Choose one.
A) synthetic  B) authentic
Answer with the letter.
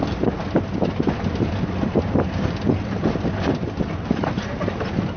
B